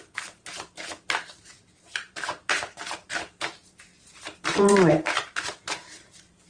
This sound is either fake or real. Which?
fake